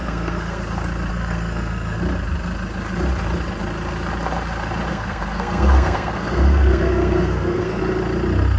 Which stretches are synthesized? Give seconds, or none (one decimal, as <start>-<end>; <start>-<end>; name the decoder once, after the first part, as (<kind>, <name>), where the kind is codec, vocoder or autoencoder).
0.0-0.6 (codec, SNAC); 1.1-2.0; 4.9-7.8